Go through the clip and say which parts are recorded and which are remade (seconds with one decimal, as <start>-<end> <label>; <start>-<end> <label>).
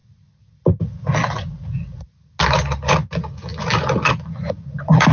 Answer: 0.0-5.1 recorded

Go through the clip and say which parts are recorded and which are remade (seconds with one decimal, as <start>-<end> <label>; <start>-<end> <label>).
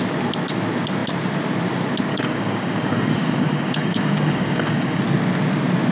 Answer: 0.0-2.1 recorded; 2.1-5.0 remade; 5.0-5.9 recorded